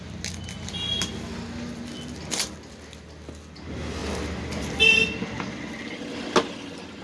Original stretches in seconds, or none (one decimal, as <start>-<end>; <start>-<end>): 0.0-7.0